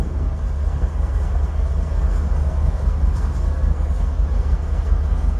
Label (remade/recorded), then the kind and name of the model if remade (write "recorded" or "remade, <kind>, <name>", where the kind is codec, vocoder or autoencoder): remade, codec, SNAC